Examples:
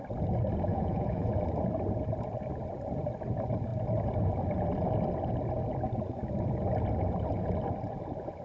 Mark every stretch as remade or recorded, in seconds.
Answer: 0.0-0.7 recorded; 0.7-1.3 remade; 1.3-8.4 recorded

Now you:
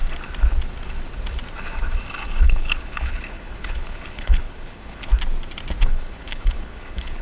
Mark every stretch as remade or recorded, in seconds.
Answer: 0.0-2.4 recorded; 2.4-5.1 remade; 5.1-5.8 recorded; 5.8-7.2 remade

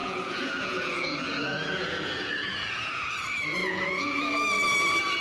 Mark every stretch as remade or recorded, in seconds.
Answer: 0.0-3.1 remade; 3.1-3.6 recorded; 3.6-4.2 remade; 4.2-5.2 recorded

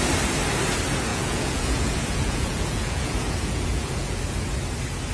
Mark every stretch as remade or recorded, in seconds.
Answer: 0.0-1.1 recorded; 1.1-4.2 remade; 4.2-5.1 recorded

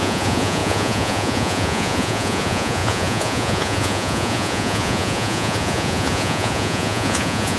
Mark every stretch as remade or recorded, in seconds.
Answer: 0.0-7.6 remade

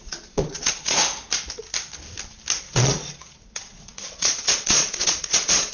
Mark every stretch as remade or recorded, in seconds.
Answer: 0.0-1.0 remade; 1.0-2.6 recorded; 2.6-5.7 remade